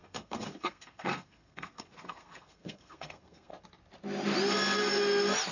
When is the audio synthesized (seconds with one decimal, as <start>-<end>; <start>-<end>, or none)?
0.0-3.5